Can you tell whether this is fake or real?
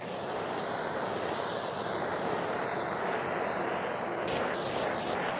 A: real